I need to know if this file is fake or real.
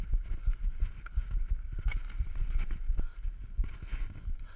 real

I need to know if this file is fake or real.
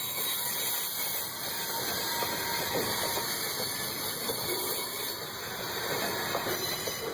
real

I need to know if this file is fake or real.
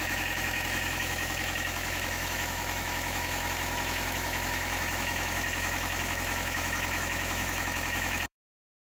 fake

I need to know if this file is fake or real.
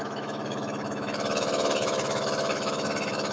fake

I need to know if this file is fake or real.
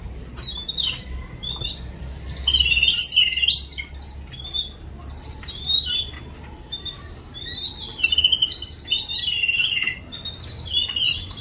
real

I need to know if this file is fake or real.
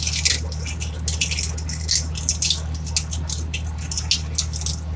real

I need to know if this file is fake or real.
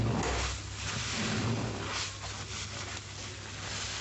real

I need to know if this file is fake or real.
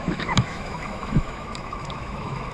fake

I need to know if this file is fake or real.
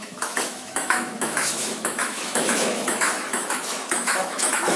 fake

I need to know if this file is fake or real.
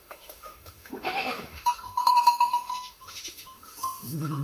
fake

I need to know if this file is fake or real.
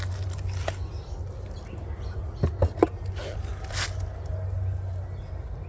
real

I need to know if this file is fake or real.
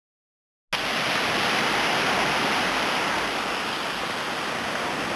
real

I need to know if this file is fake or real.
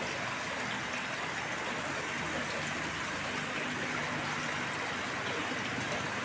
real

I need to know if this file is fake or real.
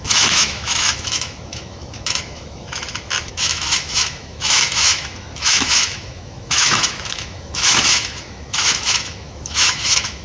fake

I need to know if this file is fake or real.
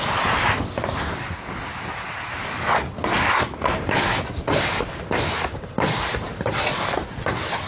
real